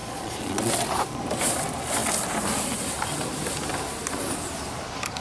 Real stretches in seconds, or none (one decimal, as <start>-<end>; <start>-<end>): 0.7-5.2